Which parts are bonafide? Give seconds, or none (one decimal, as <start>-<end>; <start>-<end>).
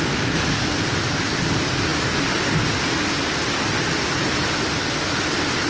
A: 0.0-5.7